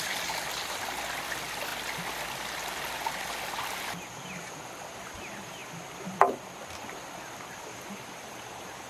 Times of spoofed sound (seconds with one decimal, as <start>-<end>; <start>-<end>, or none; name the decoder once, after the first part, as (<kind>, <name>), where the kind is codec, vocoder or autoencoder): none